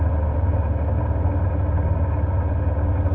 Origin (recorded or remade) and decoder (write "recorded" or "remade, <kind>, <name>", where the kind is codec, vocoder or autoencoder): recorded